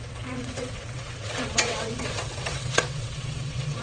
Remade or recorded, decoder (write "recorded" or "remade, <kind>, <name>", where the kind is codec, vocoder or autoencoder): remade, vocoder, WaveNeXt